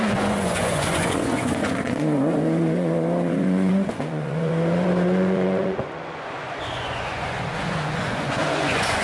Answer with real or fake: fake